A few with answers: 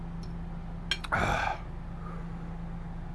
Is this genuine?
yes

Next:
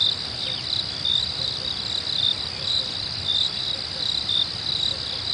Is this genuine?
yes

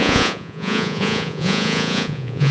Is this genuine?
no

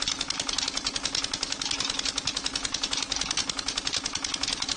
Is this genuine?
yes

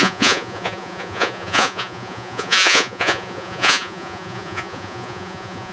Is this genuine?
no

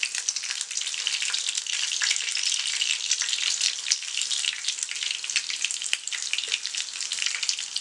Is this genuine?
yes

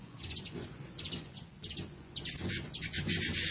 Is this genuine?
no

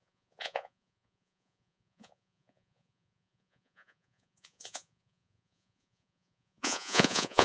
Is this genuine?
no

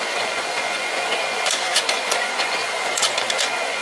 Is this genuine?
no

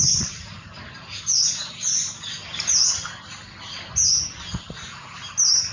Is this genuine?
yes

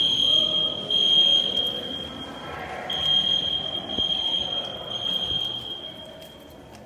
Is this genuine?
yes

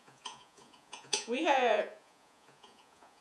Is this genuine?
no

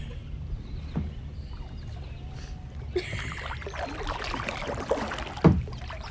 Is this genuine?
yes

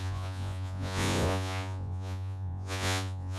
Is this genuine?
no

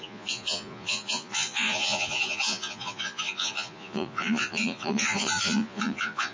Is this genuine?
no